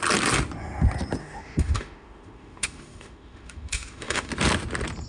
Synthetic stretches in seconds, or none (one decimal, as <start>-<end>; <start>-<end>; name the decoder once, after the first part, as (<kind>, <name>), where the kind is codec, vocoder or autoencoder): 1.2-4.3 (autoencoder, DAC-VAE)